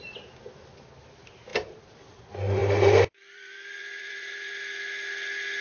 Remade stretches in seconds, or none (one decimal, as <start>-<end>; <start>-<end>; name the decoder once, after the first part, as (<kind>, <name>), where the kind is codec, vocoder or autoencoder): 1.5-2.2 (vocoder, BigVGAN v2); 2.6-4.5